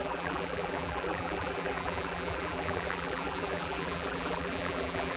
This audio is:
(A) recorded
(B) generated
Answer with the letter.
B